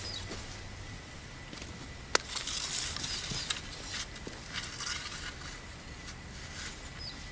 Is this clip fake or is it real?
real